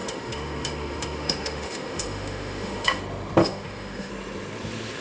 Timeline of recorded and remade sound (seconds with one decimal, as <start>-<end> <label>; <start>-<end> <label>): 0.0-3.0 remade; 3.0-3.4 recorded; 3.4-4.1 remade; 4.1-5.0 recorded